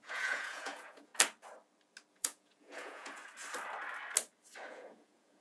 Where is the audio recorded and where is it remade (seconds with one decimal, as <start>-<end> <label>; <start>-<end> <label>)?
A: 0.0-1.1 remade; 1.1-2.1 recorded; 2.1-3.2 remade; 3.2-4.7 recorded; 4.7-5.4 remade